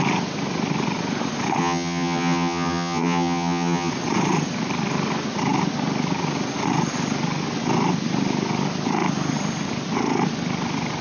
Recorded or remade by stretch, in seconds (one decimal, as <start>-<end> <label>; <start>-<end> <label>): 0.0-1.6 recorded; 1.6-3.9 remade; 3.9-11.0 recorded